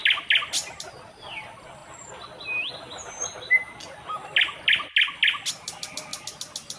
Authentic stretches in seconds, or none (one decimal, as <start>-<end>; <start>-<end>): 0.0-6.8